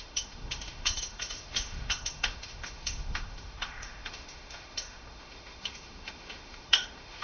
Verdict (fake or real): fake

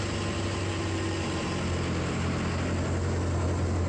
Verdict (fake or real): real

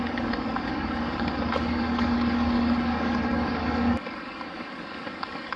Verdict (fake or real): fake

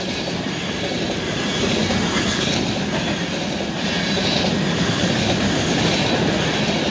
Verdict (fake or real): real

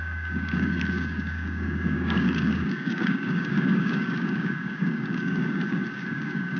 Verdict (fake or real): fake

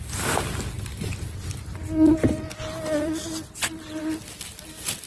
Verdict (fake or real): real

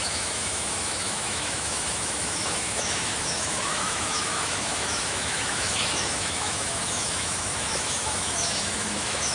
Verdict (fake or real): fake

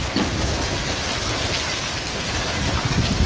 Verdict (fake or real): fake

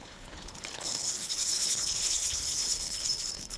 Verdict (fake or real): fake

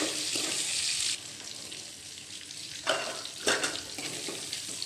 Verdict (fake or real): real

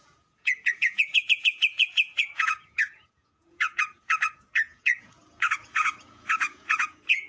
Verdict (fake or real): fake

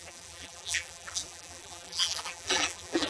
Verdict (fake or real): fake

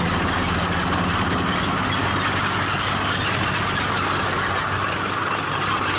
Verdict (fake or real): real